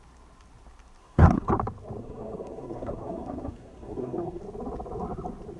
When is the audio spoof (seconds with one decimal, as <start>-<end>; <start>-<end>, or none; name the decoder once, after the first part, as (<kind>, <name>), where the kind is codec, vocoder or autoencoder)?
1.0-1.5 (codec, SNAC); 2.0-4.4